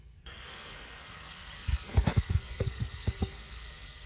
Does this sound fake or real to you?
fake